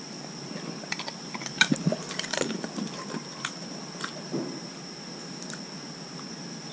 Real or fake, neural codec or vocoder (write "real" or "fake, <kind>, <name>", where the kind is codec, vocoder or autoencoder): real